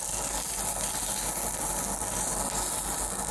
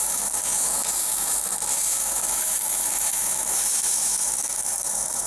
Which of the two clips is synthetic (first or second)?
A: second